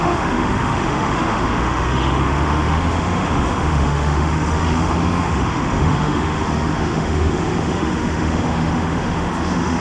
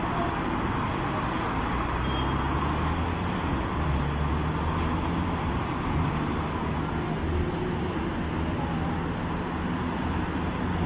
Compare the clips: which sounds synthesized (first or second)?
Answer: first